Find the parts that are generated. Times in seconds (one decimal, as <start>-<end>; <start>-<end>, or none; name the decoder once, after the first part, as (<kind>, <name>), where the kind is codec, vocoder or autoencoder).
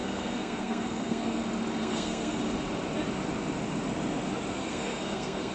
0.0-1.4 (codec, SNAC); 1.8-2.4; 4.5-5.5